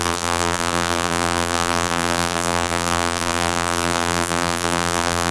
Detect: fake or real fake